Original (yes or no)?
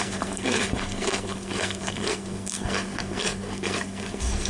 no